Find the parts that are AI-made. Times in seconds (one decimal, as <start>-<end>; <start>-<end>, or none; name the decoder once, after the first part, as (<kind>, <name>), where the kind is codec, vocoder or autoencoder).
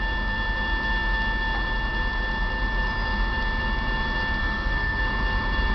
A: 4.4-5.0 (codec, SNAC)